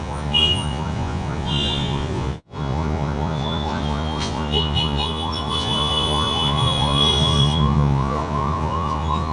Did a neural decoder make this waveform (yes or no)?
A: yes